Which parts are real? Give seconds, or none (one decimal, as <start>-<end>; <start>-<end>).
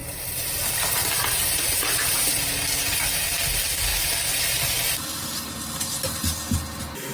3.1-3.9; 6.0-7.1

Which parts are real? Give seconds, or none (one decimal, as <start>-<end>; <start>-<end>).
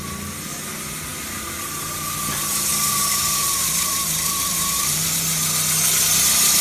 0.0-2.7; 5.1-6.6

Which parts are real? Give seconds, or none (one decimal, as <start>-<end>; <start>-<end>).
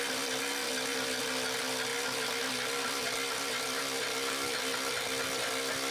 0.0-1.9; 4.6-5.9